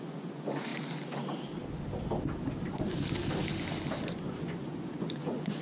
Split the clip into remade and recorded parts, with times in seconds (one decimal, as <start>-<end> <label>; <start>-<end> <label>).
0.0-0.7 remade; 0.7-4.1 recorded; 4.1-5.6 remade